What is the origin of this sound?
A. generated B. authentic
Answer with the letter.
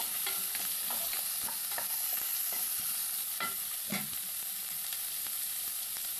B